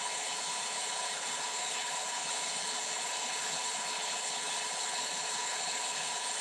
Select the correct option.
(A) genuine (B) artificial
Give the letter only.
B